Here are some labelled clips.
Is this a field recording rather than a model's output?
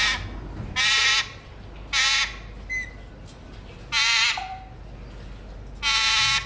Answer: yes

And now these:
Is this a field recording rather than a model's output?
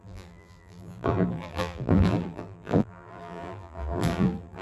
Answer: no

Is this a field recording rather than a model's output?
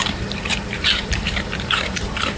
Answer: no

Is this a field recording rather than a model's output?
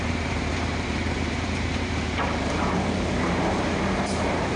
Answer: no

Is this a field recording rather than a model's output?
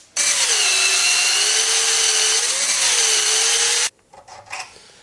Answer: yes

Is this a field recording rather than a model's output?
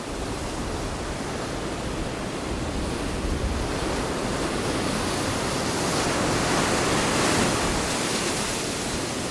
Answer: yes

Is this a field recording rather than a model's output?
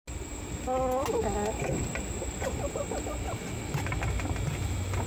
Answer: yes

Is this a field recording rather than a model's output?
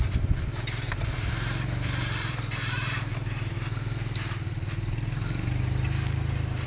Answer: no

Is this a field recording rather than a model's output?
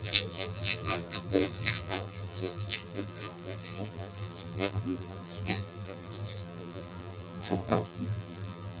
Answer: no